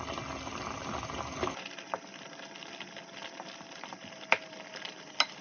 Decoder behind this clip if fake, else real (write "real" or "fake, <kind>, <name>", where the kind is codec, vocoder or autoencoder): real